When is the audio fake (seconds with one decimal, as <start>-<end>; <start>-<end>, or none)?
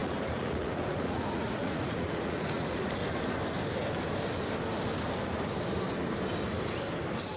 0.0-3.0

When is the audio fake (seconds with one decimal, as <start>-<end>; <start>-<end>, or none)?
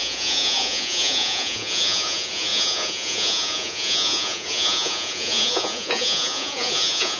0.0-7.2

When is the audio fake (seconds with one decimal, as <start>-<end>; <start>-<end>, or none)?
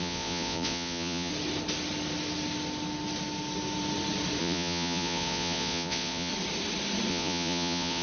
0.0-1.3; 4.4-6.3; 7.1-8.0